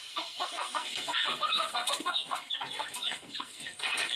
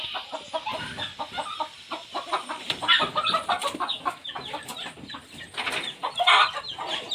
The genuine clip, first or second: second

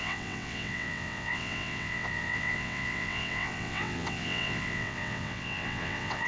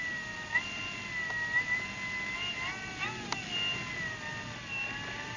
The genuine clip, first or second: second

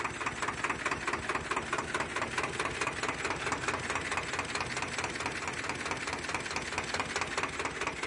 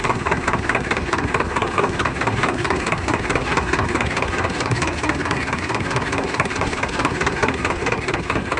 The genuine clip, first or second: first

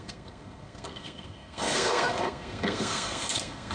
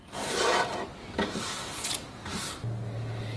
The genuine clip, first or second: second